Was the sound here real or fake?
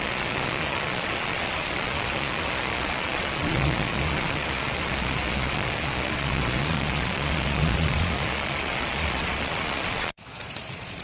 fake